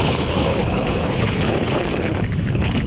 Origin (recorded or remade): remade